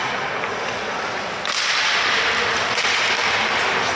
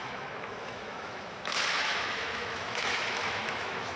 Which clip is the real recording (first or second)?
first